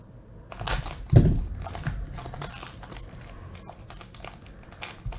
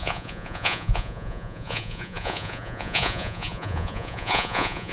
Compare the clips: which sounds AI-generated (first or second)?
second